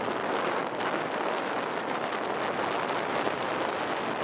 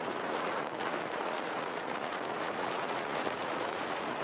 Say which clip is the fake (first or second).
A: second